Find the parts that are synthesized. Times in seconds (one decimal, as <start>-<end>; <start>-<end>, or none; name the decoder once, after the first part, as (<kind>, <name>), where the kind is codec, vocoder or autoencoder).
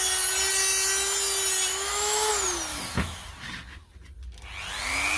1.7-2.3 (autoencoder, DAC-VAE); 2.7-3.3